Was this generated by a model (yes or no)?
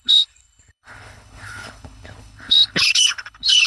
yes